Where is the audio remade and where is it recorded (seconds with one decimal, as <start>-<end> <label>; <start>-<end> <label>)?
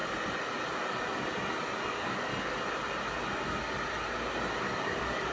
0.0-1.9 recorded; 1.9-2.3 remade; 2.3-4.6 recorded; 4.6-5.3 remade